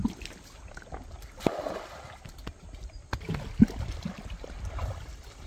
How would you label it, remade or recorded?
recorded